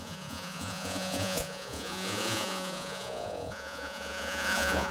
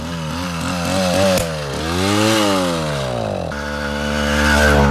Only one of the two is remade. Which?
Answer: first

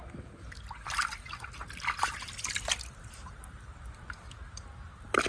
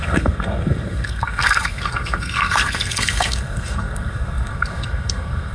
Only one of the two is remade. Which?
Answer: second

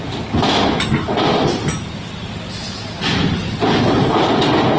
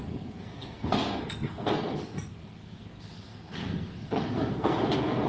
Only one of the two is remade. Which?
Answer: second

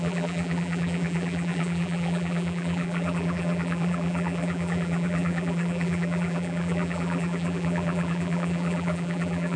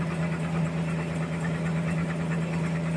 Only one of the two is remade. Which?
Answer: first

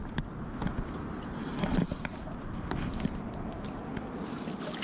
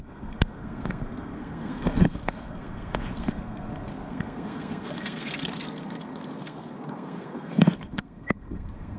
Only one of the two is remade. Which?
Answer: second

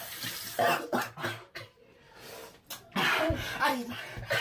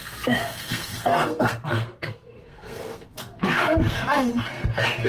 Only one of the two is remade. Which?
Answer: second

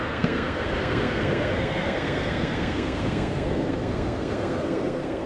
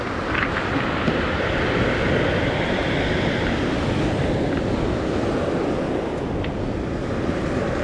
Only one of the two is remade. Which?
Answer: first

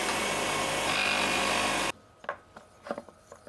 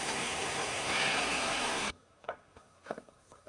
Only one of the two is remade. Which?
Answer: second